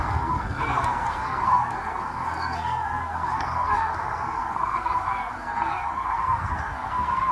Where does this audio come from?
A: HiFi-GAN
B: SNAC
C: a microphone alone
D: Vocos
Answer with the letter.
B